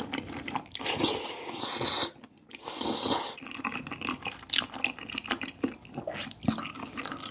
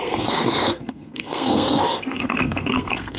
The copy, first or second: second